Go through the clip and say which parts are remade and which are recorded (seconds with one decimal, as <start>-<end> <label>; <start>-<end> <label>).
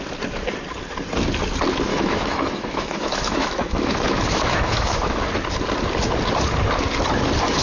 0.0-1.9 recorded; 1.9-5.2 remade; 5.2-7.6 recorded